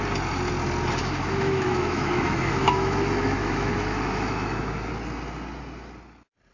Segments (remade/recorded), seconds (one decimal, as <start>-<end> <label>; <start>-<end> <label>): 0.0-1.0 recorded; 1.0-4.9 remade; 4.9-6.5 recorded

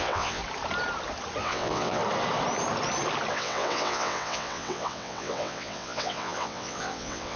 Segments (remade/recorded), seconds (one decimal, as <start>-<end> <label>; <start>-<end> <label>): 0.0-0.4 remade; 0.4-1.4 recorded; 1.4-2.0 remade; 2.0-3.3 recorded; 3.3-7.4 remade